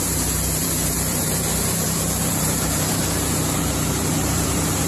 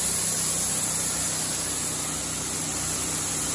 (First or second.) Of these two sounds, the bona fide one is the second